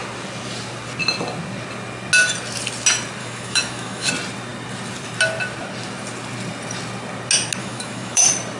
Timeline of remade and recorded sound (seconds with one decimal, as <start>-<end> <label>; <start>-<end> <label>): 0.0-3.2 recorded; 3.2-4.1 remade; 4.1-7.6 recorded; 7.6-8.2 remade; 8.2-8.6 recorded